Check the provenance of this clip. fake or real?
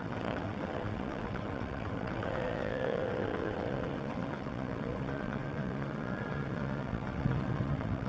fake